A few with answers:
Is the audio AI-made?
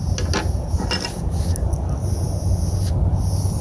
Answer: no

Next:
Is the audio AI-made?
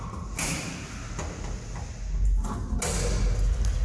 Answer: no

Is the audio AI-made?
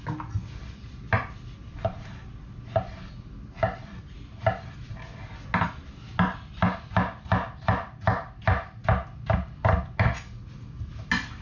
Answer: no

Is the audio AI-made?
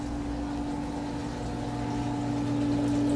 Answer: no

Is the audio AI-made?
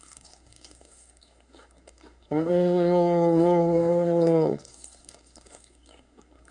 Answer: yes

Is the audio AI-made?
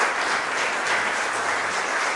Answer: no